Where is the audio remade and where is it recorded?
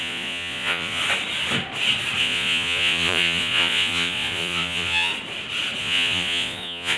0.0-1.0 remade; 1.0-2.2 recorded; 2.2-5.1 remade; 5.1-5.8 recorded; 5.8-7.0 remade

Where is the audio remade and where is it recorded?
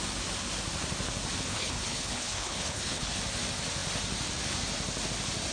0.0-1.5 recorded; 1.5-3.2 remade; 3.2-5.5 recorded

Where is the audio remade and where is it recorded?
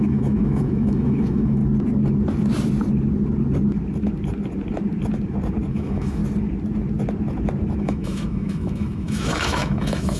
0.0-1.6 remade; 1.6-5.7 recorded; 5.7-6.2 remade; 6.2-7.8 recorded; 7.8-10.2 remade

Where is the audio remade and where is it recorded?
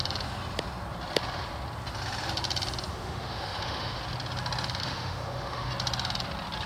0.0-2.9 recorded; 2.9-4.0 remade; 4.0-4.8 recorded; 4.8-5.7 remade; 5.7-6.7 recorded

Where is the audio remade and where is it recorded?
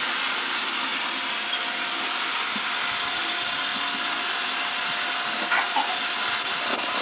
0.0-7.0 recorded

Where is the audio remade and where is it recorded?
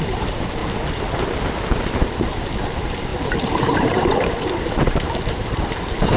0.0-0.6 remade; 0.6-2.4 recorded; 2.4-6.2 remade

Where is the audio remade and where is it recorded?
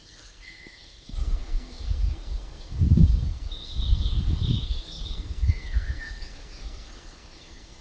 0.0-7.8 remade